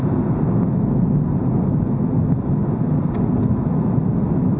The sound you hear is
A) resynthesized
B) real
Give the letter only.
B